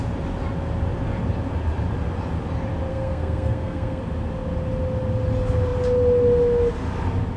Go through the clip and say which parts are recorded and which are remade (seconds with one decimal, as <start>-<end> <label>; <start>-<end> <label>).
0.0-2.9 recorded; 2.9-4.0 remade; 4.0-7.4 recorded